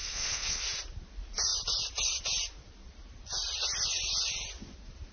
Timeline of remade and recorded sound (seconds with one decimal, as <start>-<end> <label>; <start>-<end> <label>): 0.0-0.6 remade; 0.6-5.1 recorded